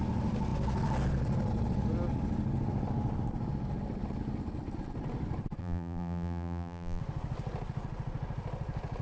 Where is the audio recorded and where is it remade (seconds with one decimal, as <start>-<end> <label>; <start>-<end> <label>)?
0.0-5.6 recorded; 5.6-7.0 remade; 7.0-9.0 recorded